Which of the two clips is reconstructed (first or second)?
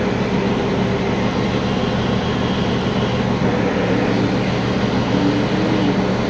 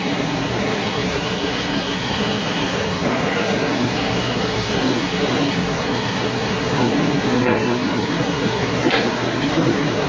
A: second